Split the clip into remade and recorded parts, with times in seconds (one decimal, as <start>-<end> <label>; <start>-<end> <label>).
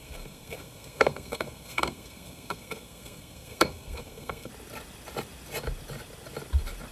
0.0-4.5 remade; 4.5-6.9 recorded